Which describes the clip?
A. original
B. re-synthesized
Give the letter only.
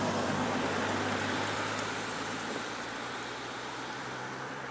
B